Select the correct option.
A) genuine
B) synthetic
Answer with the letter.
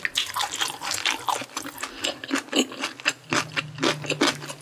A